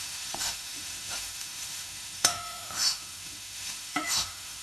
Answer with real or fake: fake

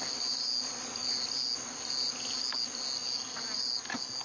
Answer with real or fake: real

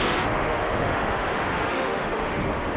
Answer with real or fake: fake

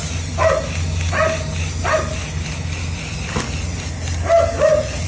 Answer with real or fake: real